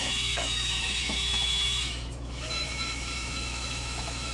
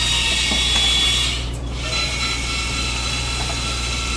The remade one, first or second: first